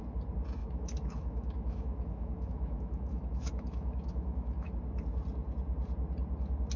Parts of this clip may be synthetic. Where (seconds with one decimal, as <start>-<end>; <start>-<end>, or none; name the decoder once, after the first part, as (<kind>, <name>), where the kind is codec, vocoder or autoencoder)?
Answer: 0.6-4.7 (autoencoder, DAC-VAE)